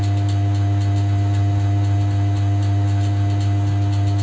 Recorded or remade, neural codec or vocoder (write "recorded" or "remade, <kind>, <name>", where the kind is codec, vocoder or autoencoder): recorded